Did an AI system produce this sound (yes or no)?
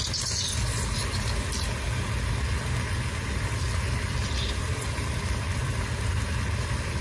no